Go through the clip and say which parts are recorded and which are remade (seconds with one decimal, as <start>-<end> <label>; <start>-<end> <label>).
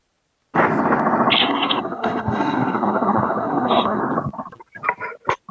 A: 0.0-1.4 recorded; 1.4-4.0 remade; 4.0-5.5 recorded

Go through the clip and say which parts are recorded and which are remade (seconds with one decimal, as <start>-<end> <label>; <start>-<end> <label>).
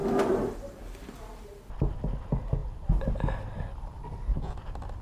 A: 0.0-1.6 remade; 1.6-5.0 recorded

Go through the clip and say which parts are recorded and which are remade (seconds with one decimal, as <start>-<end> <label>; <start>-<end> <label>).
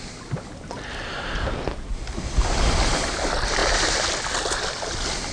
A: 0.0-5.3 recorded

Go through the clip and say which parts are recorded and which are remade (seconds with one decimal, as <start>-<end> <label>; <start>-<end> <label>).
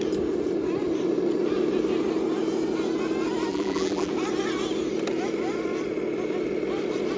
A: 0.0-3.5 recorded; 3.5-4.1 remade; 4.1-7.2 recorded